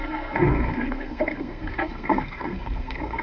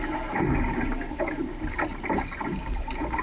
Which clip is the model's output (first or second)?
first